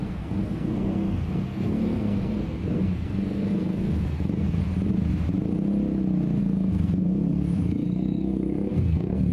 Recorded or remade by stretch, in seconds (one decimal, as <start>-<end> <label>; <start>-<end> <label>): 0.0-4.6 remade; 4.6-6.4 recorded; 6.4-9.3 remade